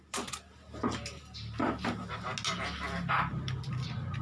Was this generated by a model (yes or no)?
no